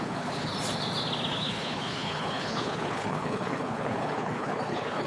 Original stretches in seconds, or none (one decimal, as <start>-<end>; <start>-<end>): 0.5-1.3